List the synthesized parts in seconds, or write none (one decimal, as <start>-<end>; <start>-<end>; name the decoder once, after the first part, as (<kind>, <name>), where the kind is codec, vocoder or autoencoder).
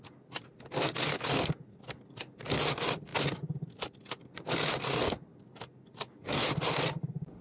none